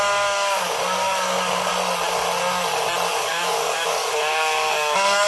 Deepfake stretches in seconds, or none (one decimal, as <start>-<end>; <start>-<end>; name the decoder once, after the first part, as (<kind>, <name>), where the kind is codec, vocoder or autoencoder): 0.0-1.7 (codec, DAC); 3.1-5.3